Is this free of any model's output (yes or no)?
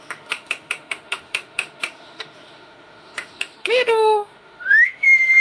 no